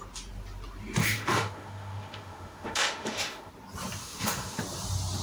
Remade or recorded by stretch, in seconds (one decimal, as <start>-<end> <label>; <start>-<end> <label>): 0.0-1.0 recorded; 1.0-3.5 remade; 3.5-4.0 recorded; 4.0-4.6 remade; 4.6-5.2 recorded